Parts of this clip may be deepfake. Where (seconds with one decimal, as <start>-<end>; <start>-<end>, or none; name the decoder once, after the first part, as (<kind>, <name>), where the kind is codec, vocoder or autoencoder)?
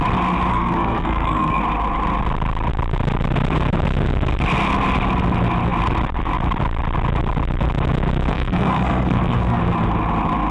0.5-1.6 (codec, SNAC); 8.3-9.6